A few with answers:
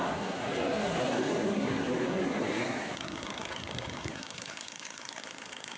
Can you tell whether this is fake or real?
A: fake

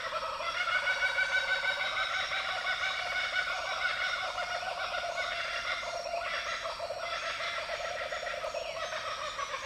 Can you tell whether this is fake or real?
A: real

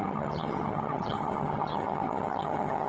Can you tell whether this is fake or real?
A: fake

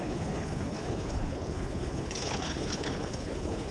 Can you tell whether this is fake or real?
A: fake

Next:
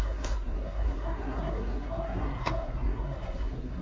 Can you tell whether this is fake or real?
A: fake